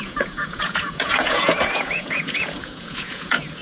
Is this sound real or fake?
fake